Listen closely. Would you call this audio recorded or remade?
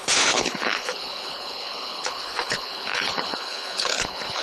remade